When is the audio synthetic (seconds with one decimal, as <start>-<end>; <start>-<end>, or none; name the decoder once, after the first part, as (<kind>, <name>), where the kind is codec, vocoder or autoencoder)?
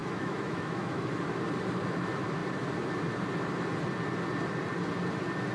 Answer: 0.0-1.1 (autoencoder, DAC-VAE)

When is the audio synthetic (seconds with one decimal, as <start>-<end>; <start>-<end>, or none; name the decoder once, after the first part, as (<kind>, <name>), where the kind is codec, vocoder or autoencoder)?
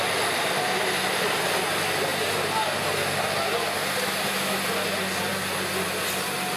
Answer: none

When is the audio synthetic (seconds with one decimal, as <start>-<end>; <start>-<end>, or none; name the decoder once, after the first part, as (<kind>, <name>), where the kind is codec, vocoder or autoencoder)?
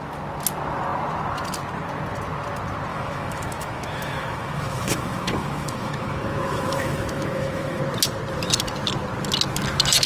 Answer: 2.9-7.8 (autoencoder, DAC-VAE)